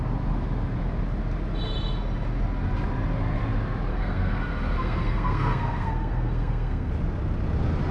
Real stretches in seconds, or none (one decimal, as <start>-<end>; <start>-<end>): 0.0-3.9; 6.9-7.9